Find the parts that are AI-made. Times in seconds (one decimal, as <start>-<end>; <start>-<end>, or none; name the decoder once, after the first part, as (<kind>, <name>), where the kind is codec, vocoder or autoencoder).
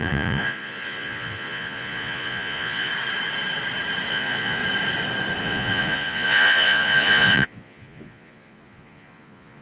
0.0-2.9 (vocoder, Vocos); 4.1-4.6; 5.4-9.6